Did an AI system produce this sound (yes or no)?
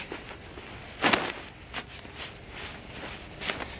no